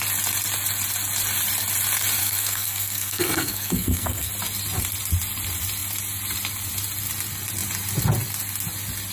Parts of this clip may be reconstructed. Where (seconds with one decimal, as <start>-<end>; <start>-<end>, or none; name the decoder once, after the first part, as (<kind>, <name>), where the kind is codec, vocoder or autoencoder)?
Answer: 2.2-4.3 (codec, SNAC)